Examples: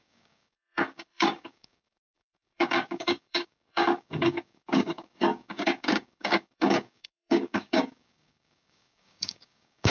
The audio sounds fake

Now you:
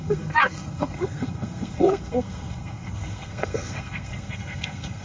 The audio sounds fake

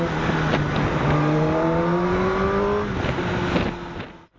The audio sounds real